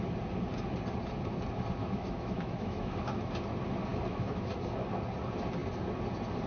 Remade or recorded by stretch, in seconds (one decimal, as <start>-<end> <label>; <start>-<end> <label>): 0.0-1.8 recorded; 1.8-3.3 remade; 3.3-3.9 recorded; 3.9-4.5 remade; 4.5-6.5 recorded

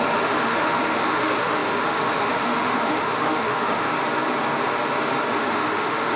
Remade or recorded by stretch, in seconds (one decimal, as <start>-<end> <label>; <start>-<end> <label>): 0.0-3.9 remade; 3.9-5.3 recorded; 5.3-6.2 remade